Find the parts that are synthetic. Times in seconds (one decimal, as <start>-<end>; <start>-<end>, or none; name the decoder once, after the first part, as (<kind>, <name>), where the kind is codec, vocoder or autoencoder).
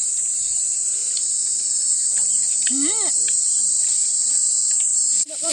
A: 4.9-5.5 (vocoder, BigVGAN v2)